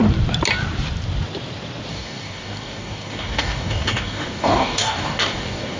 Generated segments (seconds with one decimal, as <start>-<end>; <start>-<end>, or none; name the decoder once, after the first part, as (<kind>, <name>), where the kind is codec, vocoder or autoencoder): 1.9-5.8 (codec, DAC)